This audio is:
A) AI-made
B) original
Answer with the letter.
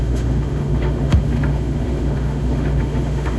A